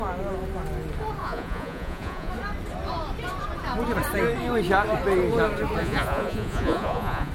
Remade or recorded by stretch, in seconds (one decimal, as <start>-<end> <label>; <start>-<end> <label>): 0.0-1.2 recorded; 1.2-2.3 remade; 2.3-5.8 recorded; 5.8-7.3 remade